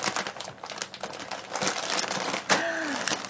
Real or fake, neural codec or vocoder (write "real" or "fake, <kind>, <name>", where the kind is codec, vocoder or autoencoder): real